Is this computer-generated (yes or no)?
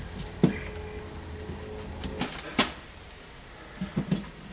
no